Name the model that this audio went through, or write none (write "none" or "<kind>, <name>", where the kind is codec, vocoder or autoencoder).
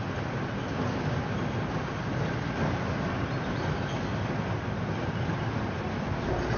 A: none